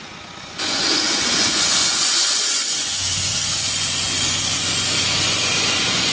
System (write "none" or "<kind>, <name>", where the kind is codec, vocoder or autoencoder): vocoder, Vocos